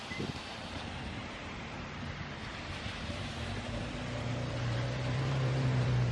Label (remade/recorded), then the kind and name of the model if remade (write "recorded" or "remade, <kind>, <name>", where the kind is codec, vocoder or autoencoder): remade, vocoder, BigVGAN v2